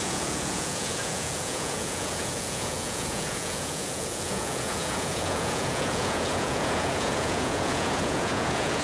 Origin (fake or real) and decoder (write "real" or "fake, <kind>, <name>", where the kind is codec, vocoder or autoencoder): fake, vocoder, Vocos